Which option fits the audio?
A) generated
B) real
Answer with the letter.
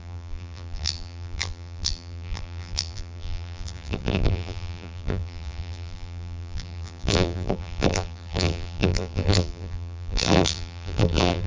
A